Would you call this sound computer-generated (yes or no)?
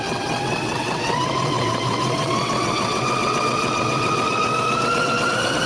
yes